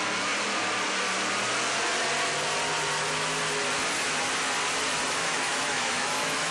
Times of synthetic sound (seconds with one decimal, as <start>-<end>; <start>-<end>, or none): 5.2-6.5